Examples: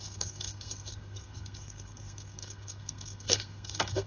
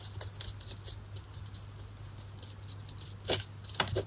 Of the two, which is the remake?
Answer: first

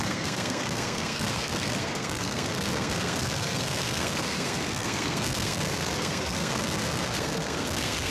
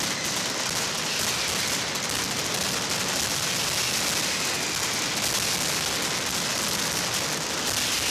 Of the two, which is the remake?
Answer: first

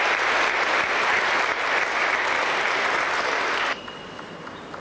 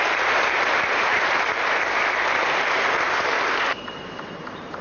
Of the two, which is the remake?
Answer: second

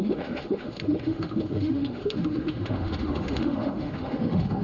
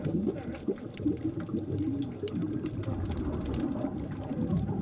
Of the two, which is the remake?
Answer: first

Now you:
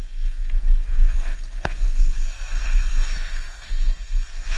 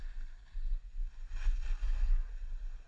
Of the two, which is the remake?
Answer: first